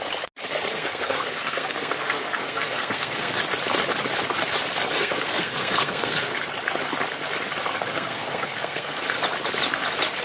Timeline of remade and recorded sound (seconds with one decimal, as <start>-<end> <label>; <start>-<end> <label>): 0.0-0.7 recorded; 0.7-3.4 remade; 3.4-4.8 recorded; 4.8-6.4 remade; 6.4-7.7 recorded; 7.7-9.0 remade; 9.0-10.2 recorded